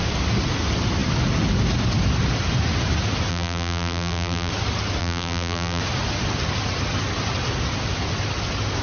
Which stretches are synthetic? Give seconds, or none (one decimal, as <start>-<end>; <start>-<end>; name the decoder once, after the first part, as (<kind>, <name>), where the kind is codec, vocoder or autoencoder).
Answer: 3.3-4.5 (vocoder, BigVGAN v2); 5.0-5.8